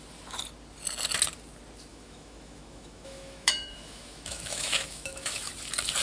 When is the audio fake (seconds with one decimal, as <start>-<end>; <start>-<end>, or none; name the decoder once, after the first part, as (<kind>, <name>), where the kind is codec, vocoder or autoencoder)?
1.9-5.5 (autoencoder, DAC-VAE)

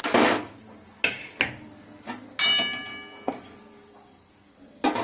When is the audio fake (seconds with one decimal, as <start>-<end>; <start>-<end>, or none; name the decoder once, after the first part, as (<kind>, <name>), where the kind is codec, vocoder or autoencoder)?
none

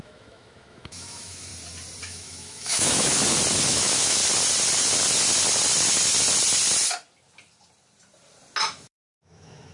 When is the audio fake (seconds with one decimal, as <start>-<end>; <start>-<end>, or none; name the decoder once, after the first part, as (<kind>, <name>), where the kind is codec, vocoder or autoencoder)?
0.0-1.5 (autoencoder, DAC-VAE); 2.0-3.2; 3.7-4.2; 8.6-9.7

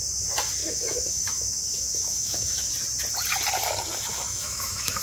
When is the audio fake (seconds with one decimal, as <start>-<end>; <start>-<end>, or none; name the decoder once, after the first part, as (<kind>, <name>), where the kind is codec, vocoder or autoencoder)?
0.6-2.7 (autoencoder, DAC-VAE); 4.1-5.0

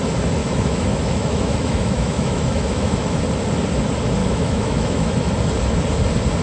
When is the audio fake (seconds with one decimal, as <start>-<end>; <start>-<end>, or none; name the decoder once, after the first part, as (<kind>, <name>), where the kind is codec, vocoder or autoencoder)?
0.4-3.2 (autoencoder, DAC-VAE); 4.2-5.3